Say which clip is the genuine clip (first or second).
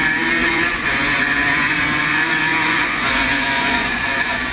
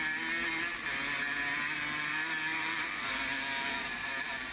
second